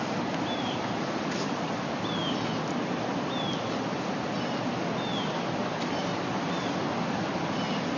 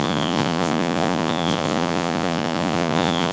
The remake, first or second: second